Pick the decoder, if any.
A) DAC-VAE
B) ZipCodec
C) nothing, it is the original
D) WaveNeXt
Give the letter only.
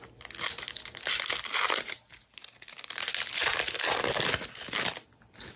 C